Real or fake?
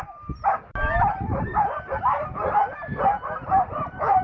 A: real